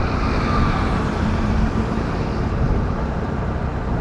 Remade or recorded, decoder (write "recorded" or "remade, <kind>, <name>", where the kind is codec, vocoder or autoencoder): remade, vocoder, BigVGAN v2